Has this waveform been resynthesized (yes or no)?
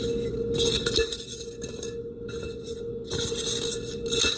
no